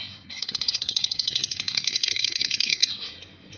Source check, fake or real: fake